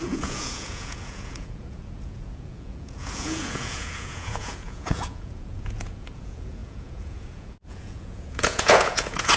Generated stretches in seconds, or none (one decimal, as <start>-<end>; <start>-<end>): 0.0-9.4